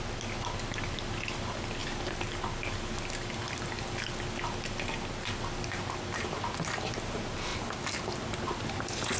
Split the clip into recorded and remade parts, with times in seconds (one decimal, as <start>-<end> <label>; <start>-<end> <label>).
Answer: 0.0-9.2 recorded